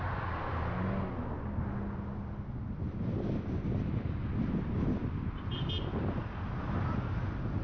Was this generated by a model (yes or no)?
no